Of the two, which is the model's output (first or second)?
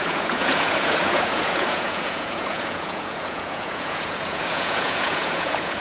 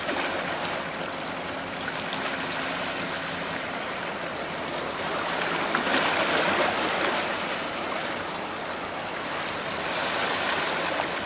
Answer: first